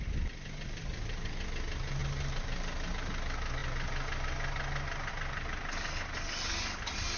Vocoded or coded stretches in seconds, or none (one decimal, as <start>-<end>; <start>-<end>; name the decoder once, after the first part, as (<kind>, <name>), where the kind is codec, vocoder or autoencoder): 0.8-1.4 (vocoder, BigVGAN v2)